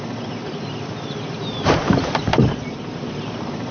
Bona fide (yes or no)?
no